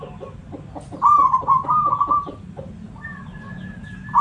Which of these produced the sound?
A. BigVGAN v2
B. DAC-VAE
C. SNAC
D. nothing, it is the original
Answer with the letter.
D